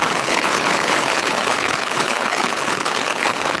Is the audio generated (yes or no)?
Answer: yes